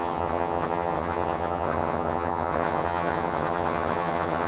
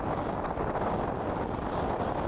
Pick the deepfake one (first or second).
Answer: first